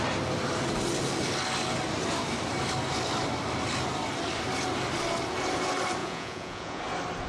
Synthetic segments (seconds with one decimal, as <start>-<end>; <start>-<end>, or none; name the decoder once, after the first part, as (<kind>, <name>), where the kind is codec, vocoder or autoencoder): 6.0-6.8 (vocoder, Vocos)